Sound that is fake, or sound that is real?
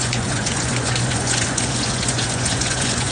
fake